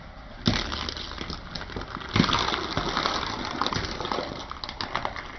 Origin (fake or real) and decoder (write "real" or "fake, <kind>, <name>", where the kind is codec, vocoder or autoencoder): real